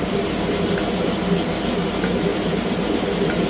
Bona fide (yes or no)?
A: yes